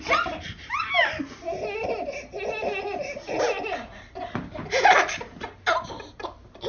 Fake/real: real